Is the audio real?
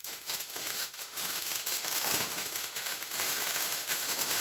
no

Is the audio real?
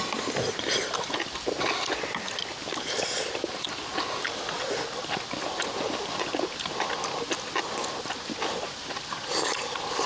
yes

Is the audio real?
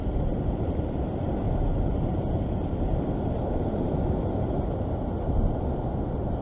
yes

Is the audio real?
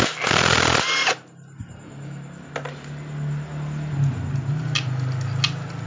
yes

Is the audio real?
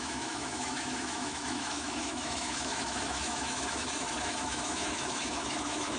no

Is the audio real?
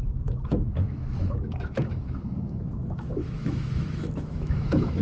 no